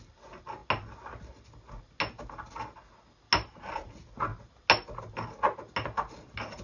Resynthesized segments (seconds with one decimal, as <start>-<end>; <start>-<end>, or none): none